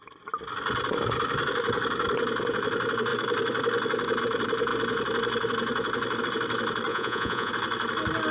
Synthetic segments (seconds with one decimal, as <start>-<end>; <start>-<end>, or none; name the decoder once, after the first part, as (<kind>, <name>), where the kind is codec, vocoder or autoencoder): 6.9-7.5 (vocoder, Vocos)